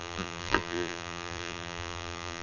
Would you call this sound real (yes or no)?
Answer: no